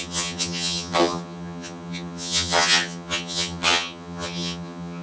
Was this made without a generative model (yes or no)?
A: no